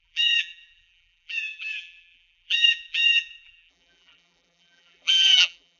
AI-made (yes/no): yes